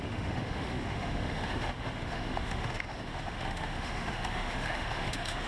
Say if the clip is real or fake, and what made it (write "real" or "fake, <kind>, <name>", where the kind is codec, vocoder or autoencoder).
fake, autoencoder, DAC-VAE